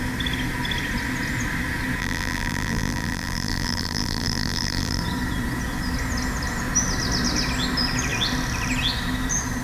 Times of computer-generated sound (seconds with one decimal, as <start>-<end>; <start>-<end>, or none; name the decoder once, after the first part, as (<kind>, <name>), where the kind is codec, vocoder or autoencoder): 2.0-5.0 (vocoder, BigVGAN v2)